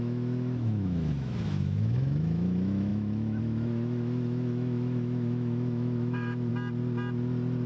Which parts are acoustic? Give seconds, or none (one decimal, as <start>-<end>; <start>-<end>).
6.5-7.7

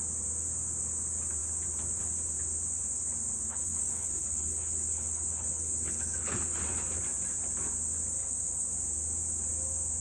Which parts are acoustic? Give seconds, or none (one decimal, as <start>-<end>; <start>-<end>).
0.0-3.5; 6.6-8.2; 8.7-10.0

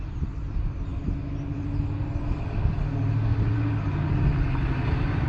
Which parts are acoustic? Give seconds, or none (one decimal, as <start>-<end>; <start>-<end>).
0.0-5.3

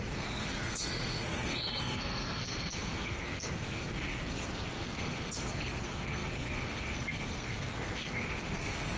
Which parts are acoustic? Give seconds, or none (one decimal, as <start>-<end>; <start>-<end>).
none